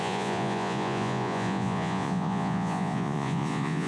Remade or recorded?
remade